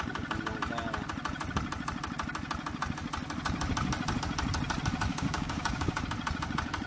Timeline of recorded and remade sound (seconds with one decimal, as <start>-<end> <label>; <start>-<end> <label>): 0.0-5.1 recorded; 5.1-6.0 remade; 6.0-6.9 recorded

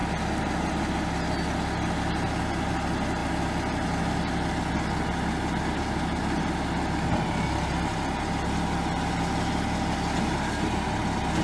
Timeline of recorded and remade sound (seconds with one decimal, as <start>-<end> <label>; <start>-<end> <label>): 0.0-11.4 recorded

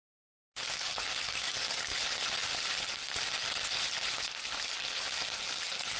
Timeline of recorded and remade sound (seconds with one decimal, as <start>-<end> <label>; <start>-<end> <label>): 0.0-0.7 recorded; 0.7-1.9 remade; 1.9-5.5 recorded; 5.5-6.0 remade